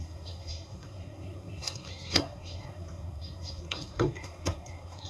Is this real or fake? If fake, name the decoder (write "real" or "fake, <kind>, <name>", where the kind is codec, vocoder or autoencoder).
fake, codec, SNAC